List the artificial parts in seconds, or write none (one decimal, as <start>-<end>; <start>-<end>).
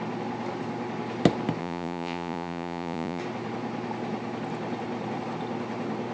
1.6-3.2